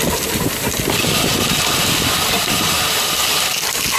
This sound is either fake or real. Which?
real